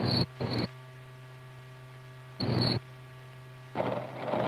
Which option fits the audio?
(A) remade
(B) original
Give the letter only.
B